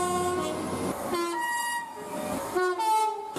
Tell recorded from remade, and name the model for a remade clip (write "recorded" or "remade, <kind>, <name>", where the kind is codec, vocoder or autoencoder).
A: recorded